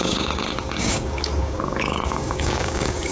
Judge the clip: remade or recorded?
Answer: remade